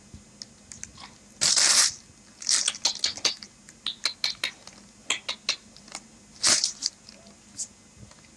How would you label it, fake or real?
real